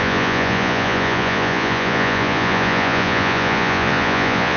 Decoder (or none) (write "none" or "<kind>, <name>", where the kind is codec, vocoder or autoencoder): vocoder, Vocos